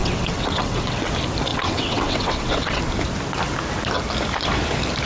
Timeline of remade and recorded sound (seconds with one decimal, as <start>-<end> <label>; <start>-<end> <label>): 0.0-1.1 remade; 1.1-1.5 recorded; 1.5-2.8 remade; 2.8-5.1 recorded